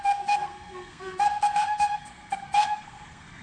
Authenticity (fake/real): fake